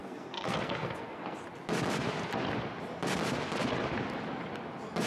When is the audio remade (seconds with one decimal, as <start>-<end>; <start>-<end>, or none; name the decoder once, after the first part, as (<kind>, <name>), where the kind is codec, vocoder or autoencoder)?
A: 0.0-1.4 (codec, SNAC)